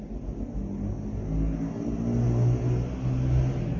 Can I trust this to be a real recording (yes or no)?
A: yes